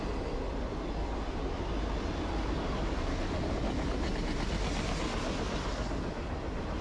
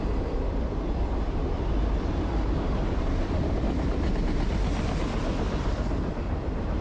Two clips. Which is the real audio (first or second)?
first